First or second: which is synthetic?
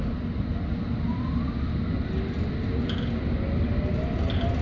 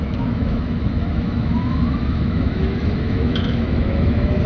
second